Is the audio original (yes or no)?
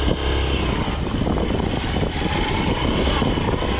yes